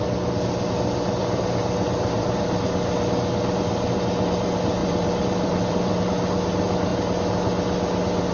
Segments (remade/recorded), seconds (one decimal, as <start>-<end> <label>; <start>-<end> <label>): 0.0-1.2 recorded; 1.2-2.6 remade; 2.6-4.8 recorded; 4.8-5.7 remade; 5.7-8.3 recorded